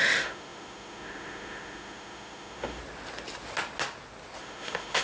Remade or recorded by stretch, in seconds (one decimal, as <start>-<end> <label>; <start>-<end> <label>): 0.0-2.8 remade; 2.8-4.4 recorded; 4.4-5.0 remade